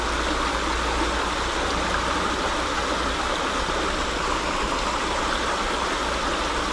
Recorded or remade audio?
recorded